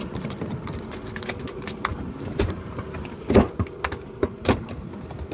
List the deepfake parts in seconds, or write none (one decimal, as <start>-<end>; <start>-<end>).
1.9-2.8